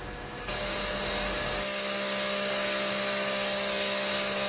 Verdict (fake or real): fake